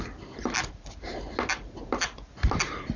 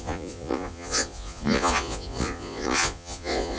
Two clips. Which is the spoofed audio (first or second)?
second